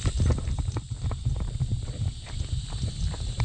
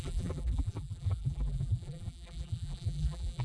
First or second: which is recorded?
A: first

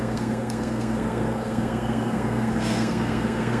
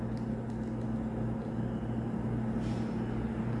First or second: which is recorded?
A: second